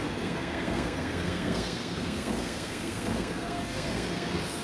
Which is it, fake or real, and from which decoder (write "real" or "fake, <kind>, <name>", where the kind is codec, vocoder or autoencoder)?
fake, codec, SNAC